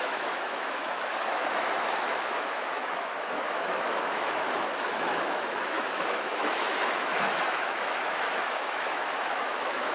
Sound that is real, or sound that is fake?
fake